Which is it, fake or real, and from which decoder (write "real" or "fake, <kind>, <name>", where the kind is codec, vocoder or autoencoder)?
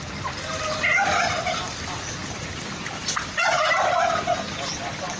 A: real